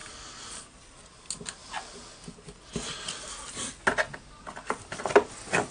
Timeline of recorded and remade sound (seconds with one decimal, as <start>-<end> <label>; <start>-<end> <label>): 0.0-5.7 recorded